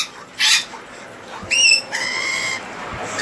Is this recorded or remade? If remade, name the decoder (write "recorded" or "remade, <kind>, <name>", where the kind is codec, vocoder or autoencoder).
remade, vocoder, BigVGAN v2